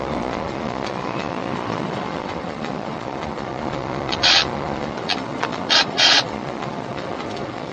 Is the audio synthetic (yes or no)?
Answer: yes